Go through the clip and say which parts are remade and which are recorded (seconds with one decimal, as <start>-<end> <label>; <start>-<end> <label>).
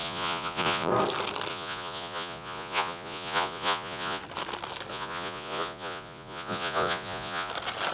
0.0-0.9 remade; 0.9-1.5 recorded; 1.5-4.2 remade; 4.2-4.9 recorded; 4.9-7.5 remade; 7.5-7.9 recorded